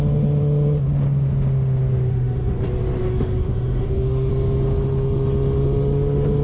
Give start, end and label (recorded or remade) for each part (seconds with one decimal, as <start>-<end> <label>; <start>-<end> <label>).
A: 0.0-2.1 recorded; 2.1-2.6 remade; 2.6-3.0 recorded; 3.0-4.3 remade; 4.3-6.4 recorded